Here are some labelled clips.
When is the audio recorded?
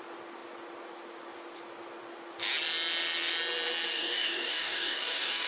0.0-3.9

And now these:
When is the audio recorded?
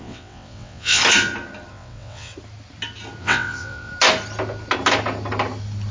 1.0-1.7; 2.3-3.2; 3.9-5.9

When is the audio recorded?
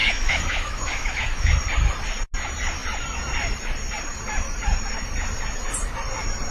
1.5-6.5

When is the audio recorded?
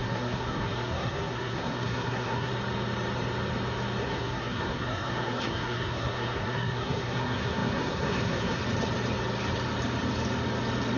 2.5-4.0; 8.6-11.0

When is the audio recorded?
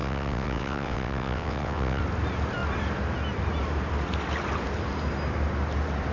2.0-6.1